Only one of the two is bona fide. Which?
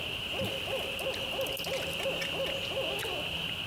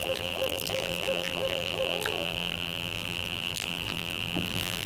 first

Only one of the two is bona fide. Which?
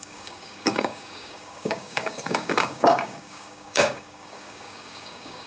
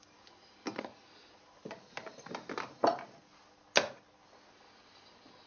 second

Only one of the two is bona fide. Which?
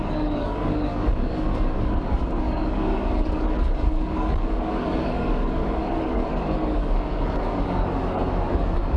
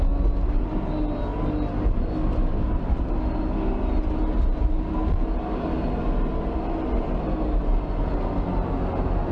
second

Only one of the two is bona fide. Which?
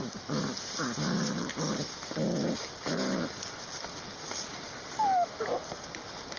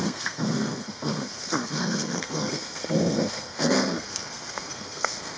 first